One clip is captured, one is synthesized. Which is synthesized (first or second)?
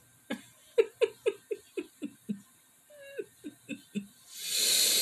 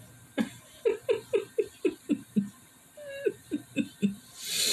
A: second